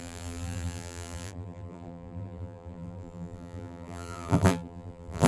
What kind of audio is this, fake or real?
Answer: fake